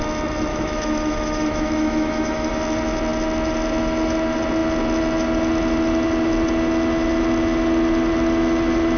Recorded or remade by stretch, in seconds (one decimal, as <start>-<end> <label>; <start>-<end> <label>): 0.0-0.5 recorded; 0.5-2.5 remade; 2.5-9.0 recorded